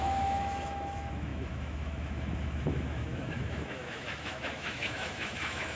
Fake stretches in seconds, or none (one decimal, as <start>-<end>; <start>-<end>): 0.0-5.8